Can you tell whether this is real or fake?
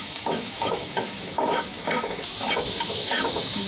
fake